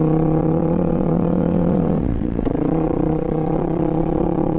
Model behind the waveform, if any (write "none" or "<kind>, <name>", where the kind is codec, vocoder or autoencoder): vocoder, WaveNeXt